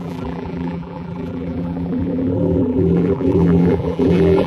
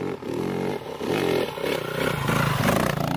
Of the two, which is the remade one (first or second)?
first